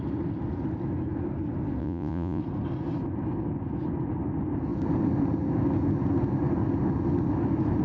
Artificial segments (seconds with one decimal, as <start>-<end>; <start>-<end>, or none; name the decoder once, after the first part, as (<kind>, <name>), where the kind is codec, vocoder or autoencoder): 1.8-2.4 (vocoder, Vocos)

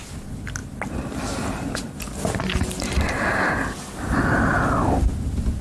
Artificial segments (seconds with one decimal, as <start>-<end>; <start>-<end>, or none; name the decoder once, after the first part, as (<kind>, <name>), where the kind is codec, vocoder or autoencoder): none

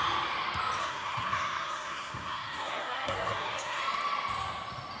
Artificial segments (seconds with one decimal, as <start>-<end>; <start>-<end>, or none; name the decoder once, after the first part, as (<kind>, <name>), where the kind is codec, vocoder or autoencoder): 0.8-3.8 (codec, SNAC)

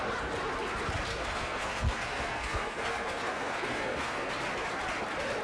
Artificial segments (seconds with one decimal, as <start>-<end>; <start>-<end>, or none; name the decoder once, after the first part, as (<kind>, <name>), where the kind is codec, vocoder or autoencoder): 1.1-4.3 (codec, SNAC)

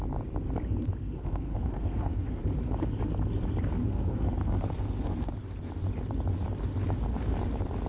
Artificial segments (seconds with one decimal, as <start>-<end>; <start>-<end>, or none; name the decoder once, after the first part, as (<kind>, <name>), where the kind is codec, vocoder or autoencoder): 1.0-2.4 (codec, SNAC); 3.8-5.3